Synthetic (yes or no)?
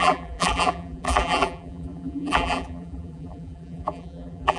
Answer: yes